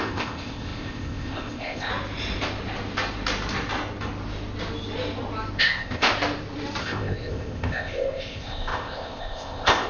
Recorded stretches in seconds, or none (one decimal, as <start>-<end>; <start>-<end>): 1.9-5.6; 6.1-6.8